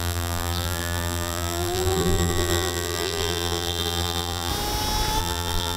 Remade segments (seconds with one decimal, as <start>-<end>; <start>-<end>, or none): 0.0-4.5; 5.2-5.8